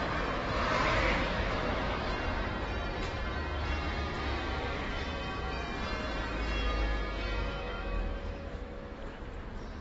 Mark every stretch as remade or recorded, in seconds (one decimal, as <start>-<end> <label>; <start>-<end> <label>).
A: 0.0-1.3 recorded; 1.3-2.1 remade; 2.1-7.5 recorded; 7.5-9.0 remade; 9.0-9.8 recorded